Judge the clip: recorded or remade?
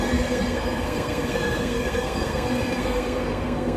remade